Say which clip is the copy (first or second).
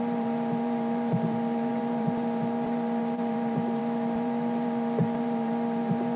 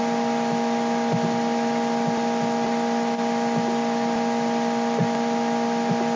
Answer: first